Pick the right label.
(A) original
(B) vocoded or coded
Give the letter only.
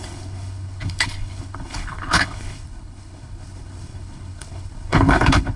B